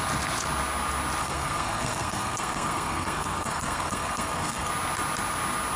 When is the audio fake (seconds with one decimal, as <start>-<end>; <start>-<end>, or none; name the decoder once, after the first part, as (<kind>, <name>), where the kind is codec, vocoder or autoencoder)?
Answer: 1.2-4.7 (codec, SNAC)